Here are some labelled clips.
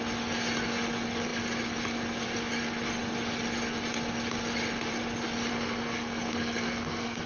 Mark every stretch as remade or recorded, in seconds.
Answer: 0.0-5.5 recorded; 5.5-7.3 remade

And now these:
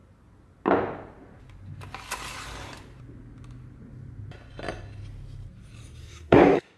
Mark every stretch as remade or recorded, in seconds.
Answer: 0.0-6.0 recorded; 6.0-6.8 remade

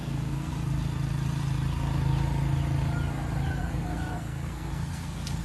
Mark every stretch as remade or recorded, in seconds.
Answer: 0.0-0.5 remade; 0.5-3.6 recorded; 3.6-5.4 remade

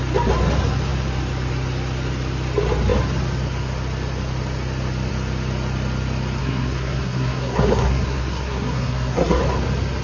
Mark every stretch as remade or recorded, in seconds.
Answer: 0.0-6.4 recorded; 6.4-9.4 remade; 9.4-10.0 recorded

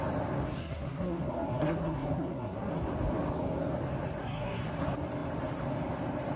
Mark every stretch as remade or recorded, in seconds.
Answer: 0.0-0.6 recorded; 0.6-2.7 remade; 2.7-4.2 recorded; 4.2-4.7 remade; 4.7-6.4 recorded